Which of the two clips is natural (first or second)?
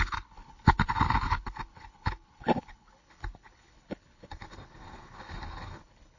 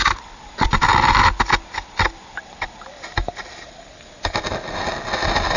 second